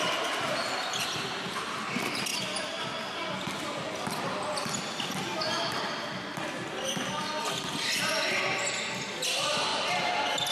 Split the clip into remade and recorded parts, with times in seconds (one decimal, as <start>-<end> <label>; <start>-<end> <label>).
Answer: 0.0-10.5 recorded